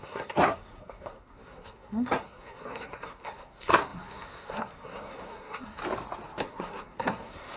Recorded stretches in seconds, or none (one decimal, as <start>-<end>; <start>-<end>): 5.8-6.4